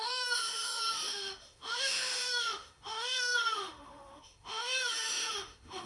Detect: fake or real fake